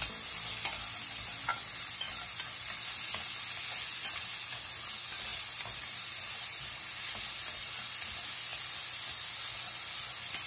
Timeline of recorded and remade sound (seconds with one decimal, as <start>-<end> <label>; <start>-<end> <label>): 0.0-1.5 recorded; 1.5-2.1 remade; 2.1-5.3 recorded; 5.3-6.4 remade; 6.4-10.5 recorded